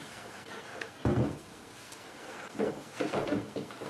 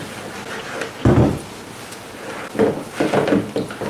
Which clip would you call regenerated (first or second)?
first